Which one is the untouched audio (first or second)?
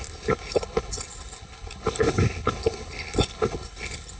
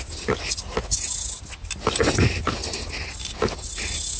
second